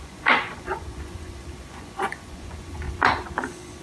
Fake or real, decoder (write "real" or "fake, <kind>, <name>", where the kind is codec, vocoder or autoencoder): fake, vocoder, Vocos